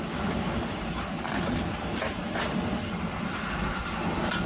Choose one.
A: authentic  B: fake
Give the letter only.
A